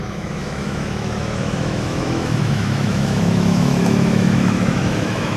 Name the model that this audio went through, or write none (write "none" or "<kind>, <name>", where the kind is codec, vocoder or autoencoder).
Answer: autoencoder, DAC-VAE